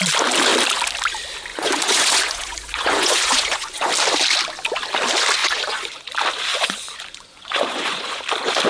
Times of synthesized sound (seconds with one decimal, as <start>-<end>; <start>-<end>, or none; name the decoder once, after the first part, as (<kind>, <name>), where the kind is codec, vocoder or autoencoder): 1.5-3.9 (vocoder, Vocos); 5.4-6.0; 6.5-8.2